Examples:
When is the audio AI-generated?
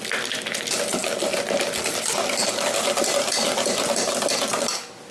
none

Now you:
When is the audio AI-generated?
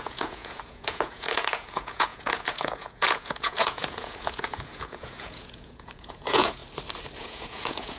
0.0-6.6 (vocoder, Vocos); 7.2-8.0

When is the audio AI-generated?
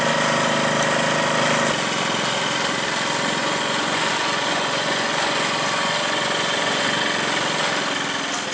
3.4-7.0 (vocoder, Vocos)